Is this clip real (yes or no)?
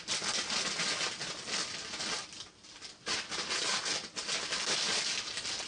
yes